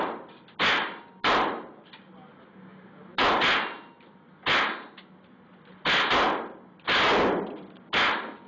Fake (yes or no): no